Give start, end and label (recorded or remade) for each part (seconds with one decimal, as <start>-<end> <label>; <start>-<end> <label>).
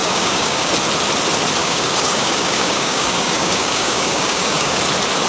0.0-0.7 remade; 0.7-1.6 recorded; 1.6-4.8 remade; 4.8-5.3 recorded